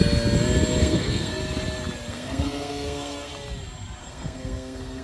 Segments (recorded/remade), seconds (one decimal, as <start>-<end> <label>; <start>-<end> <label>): 0.0-0.8 recorded; 0.8-1.4 remade; 1.4-2.1 recorded; 2.1-3.3 remade; 3.3-4.0 recorded; 4.0-5.0 remade